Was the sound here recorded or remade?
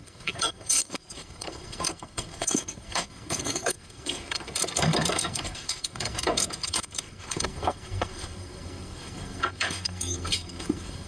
remade